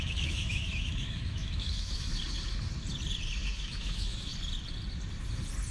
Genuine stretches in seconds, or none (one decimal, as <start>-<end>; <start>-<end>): 2.2-3.5; 4.3-5.7